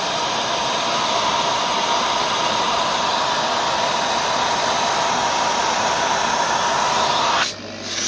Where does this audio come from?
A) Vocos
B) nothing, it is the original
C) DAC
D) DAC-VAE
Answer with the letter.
B